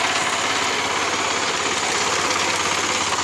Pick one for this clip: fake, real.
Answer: real